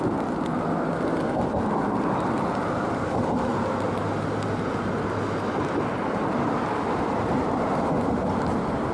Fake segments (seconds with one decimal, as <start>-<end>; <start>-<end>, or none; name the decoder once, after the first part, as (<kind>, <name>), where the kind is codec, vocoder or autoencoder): none